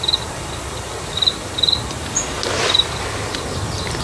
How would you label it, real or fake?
real